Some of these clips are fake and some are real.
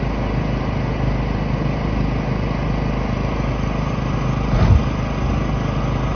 real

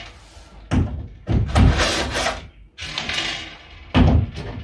real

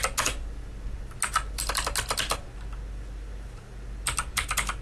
real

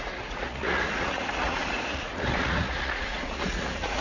fake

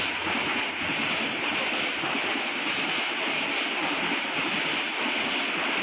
real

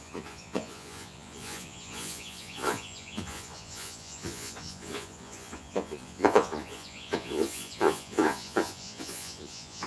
fake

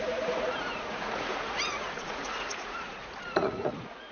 fake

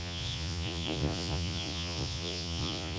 fake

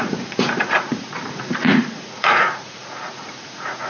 fake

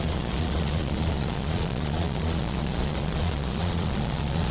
fake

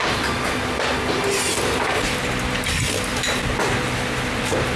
real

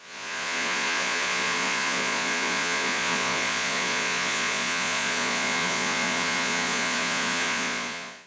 fake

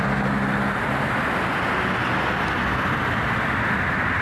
real